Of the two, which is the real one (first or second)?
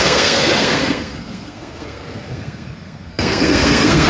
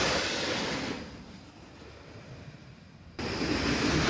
second